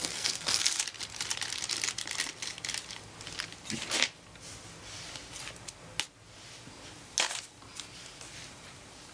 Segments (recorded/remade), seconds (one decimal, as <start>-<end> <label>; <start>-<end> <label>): 0.0-0.8 remade; 0.8-9.1 recorded

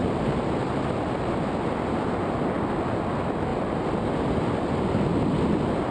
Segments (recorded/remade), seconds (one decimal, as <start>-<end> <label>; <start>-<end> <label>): 0.0-1.3 remade; 1.3-3.5 recorded; 3.5-4.4 remade; 4.4-5.9 recorded

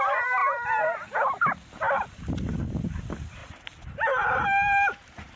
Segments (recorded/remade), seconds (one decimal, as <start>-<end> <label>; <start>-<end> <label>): 0.0-5.4 recorded

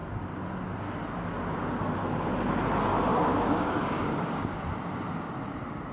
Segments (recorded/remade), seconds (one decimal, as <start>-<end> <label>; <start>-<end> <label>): 0.0-3.1 recorded; 3.1-4.6 remade; 4.6-5.9 recorded